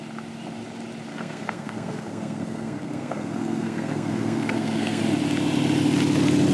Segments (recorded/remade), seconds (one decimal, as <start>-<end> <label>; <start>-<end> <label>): 0.0-1.1 recorded; 1.1-5.0 remade; 5.0-6.5 recorded